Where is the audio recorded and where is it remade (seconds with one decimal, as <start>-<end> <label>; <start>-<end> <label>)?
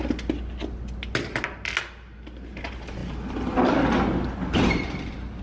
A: 0.0-5.4 recorded